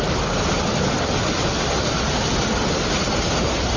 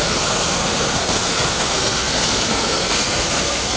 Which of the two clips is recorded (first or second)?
first